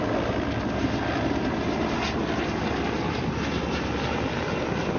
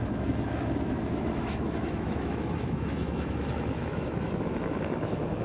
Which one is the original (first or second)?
first